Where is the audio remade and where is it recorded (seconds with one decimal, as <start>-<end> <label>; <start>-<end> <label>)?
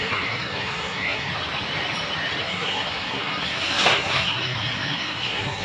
0.0-1.3 remade; 1.3-2.4 recorded; 2.4-5.6 remade